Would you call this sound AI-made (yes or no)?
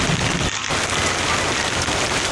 no